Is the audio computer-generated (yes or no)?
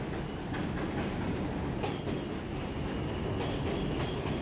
no